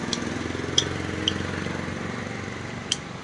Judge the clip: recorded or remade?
recorded